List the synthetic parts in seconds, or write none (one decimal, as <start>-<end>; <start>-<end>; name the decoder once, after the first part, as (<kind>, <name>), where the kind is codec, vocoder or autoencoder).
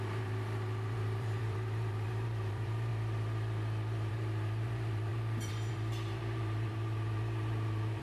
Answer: 0.0-2.9 (vocoder, BigVGAN v2); 4.1-8.0